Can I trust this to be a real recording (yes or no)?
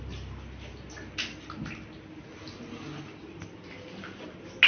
yes